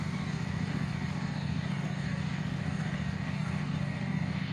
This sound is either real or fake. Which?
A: fake